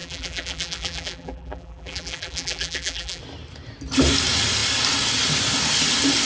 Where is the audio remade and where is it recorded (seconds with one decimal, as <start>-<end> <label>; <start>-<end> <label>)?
0.0-3.2 remade; 3.2-6.2 recorded